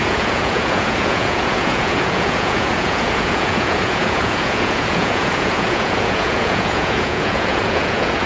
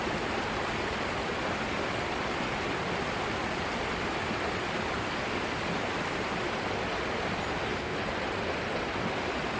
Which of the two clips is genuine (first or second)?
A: second